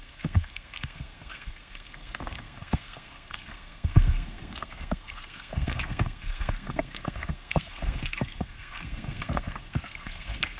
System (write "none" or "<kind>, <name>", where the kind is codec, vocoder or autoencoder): codec, SNAC